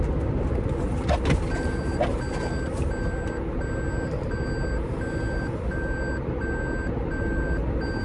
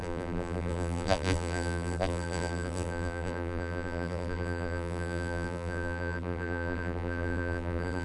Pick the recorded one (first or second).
first